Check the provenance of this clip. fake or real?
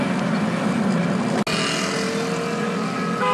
real